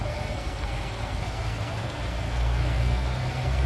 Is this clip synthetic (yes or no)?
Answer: yes